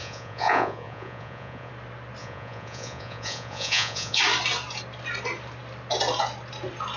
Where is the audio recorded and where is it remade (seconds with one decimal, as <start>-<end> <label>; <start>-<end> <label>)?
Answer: 0.0-1.7 remade; 1.7-2.2 recorded; 2.2-4.2 remade; 4.2-7.0 recorded